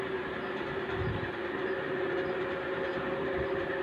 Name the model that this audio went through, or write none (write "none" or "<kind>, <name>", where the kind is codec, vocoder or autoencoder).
none